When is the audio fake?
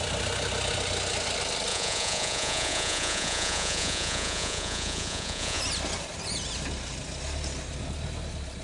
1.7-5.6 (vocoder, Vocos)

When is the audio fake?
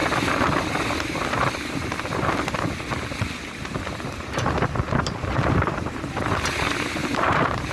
5.0-6.6 (vocoder, BigVGAN v2); 7.0-7.7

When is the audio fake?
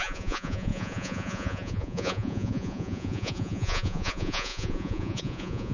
0.0-5.7 (vocoder, Vocos)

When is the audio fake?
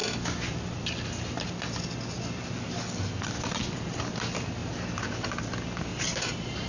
5.9-6.7 (vocoder, BigVGAN v2)